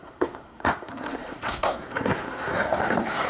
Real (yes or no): no